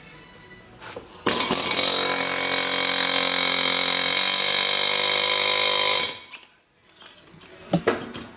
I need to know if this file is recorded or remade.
recorded